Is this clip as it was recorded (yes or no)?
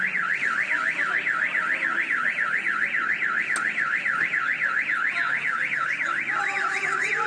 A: yes